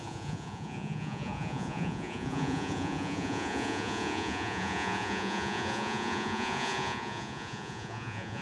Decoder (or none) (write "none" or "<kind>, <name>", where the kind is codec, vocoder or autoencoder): vocoder, Vocos